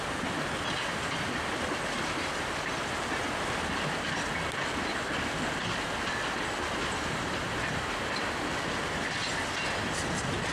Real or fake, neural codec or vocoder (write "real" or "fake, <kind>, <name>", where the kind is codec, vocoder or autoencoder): real